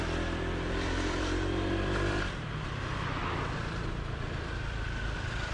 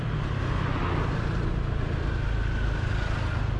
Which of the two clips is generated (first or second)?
first